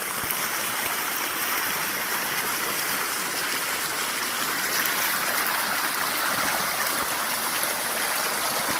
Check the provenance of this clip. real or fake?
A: real